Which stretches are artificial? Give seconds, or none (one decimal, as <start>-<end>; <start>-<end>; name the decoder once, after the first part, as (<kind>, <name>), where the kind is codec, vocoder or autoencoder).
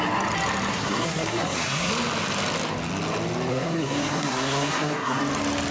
0.7-1.9 (codec, SNAC); 3.5-5.2